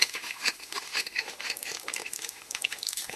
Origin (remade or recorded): remade